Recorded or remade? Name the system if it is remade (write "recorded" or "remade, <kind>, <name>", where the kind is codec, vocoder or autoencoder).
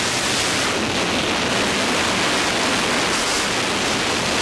recorded